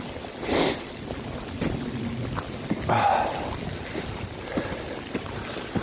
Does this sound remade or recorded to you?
recorded